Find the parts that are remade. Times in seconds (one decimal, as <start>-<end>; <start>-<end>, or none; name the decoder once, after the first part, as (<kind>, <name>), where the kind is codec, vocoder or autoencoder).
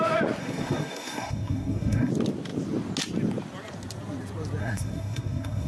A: 0.4-2.1 (codec, SNAC); 4.6-5.7